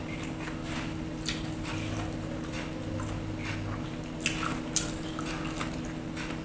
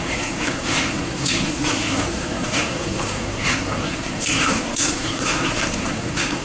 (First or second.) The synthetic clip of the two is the second